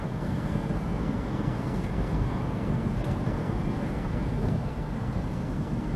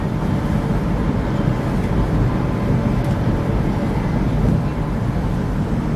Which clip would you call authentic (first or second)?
second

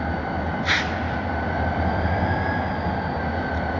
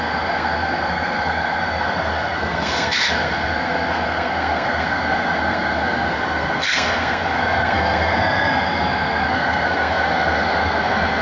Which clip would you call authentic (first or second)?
first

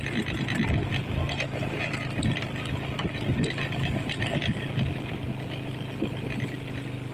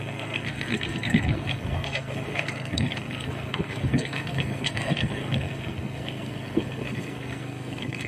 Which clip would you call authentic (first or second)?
first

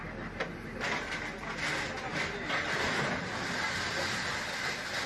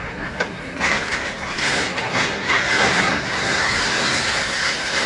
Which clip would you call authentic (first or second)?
first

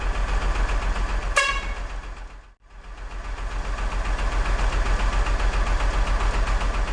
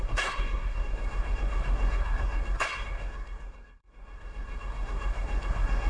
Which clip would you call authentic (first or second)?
first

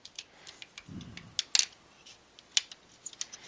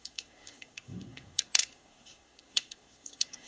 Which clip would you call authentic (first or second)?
first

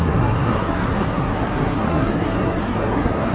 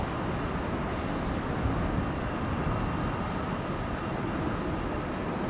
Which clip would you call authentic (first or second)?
second